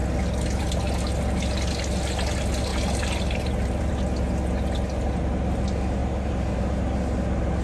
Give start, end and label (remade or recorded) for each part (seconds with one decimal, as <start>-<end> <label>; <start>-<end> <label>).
0.0-2.7 recorded; 2.7-3.9 remade; 3.9-6.0 recorded; 6.0-6.7 remade; 6.7-7.6 recorded